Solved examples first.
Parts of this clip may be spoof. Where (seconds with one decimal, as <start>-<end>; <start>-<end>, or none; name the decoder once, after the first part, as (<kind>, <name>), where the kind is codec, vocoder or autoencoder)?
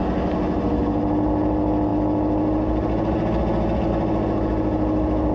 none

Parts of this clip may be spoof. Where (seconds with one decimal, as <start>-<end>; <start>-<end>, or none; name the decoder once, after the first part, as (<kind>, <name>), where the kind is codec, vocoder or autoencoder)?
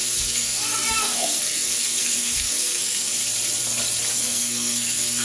0.0-3.1 (codec, SNAC); 4.1-5.2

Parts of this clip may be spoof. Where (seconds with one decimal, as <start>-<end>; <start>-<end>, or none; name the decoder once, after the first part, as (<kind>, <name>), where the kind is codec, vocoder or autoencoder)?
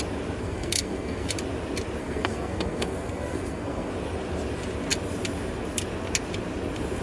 0.4-1.3 (codec, SNAC); 2.0-3.9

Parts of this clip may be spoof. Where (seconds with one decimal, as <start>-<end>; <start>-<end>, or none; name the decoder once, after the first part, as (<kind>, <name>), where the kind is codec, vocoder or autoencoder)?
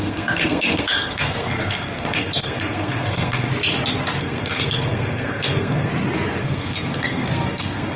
0.0-3.5 (codec, SNAC); 4.2-5.9; 6.4-8.0